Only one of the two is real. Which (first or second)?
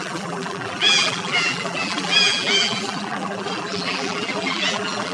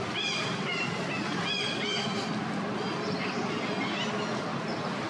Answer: second